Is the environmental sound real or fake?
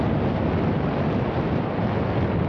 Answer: real